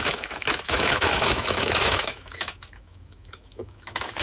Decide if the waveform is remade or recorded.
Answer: remade